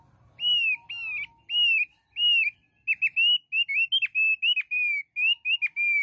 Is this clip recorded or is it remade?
recorded